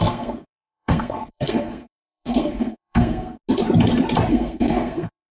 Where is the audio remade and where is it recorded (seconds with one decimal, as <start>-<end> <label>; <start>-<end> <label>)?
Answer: 0.0-3.4 remade; 3.4-4.3 recorded; 4.3-5.3 remade